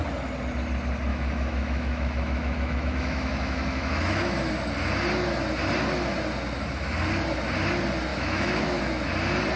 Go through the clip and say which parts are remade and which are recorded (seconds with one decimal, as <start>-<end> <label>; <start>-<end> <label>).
0.0-1.1 recorded; 1.1-4.5 remade; 4.5-8.1 recorded; 8.1-8.8 remade; 8.8-9.6 recorded